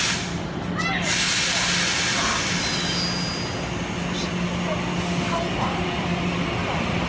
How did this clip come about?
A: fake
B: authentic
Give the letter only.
B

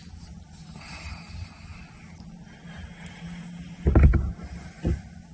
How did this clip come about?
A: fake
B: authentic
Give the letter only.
B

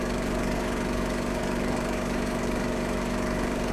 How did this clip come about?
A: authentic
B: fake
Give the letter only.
B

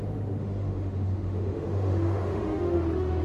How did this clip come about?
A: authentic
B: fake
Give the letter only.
B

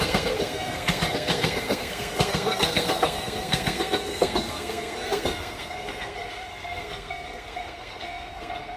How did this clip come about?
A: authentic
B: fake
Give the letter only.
B